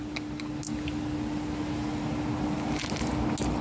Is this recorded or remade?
recorded